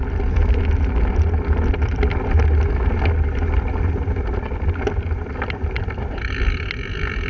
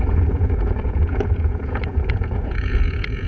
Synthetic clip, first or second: second